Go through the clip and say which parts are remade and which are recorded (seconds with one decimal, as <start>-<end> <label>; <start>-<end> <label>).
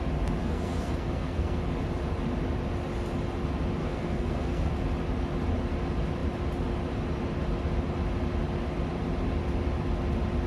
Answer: 0.0-0.4 recorded; 0.4-1.6 remade; 1.6-3.8 recorded; 3.8-4.7 remade; 4.7-10.5 recorded